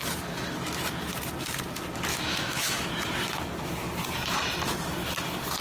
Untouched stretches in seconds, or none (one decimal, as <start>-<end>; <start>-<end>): 0.0-2.1; 2.9-5.6